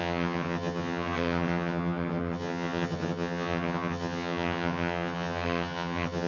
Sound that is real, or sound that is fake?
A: fake